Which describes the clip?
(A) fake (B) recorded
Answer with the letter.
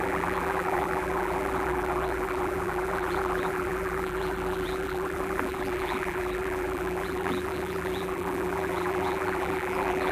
A